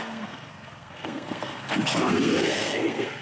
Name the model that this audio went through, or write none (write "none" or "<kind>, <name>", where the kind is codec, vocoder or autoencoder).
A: codec, SNAC